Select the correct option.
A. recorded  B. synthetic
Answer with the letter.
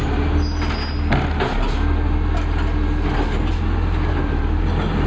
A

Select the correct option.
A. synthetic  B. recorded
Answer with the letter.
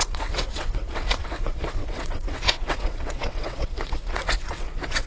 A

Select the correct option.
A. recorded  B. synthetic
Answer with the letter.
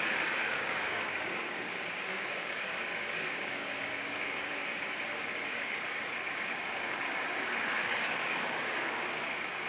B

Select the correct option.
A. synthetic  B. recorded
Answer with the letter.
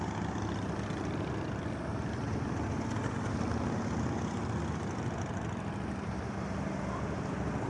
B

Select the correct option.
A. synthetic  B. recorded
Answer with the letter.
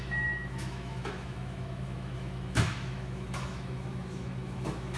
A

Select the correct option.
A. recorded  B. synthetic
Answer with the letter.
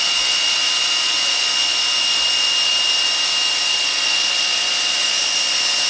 A